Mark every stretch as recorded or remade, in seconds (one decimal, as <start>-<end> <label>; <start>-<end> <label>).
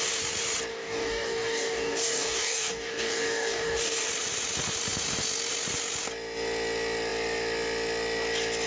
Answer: 0.0-0.7 recorded; 0.7-4.1 remade; 4.1-8.7 recorded